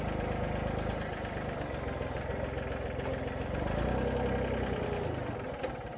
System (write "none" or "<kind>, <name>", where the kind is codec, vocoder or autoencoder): none